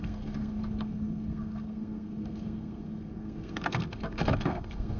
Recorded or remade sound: remade